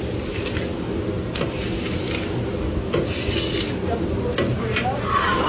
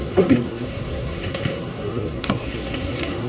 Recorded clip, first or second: first